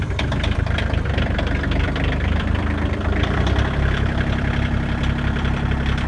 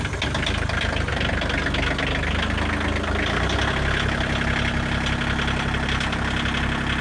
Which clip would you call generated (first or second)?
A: first